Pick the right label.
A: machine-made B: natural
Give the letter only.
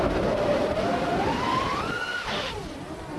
A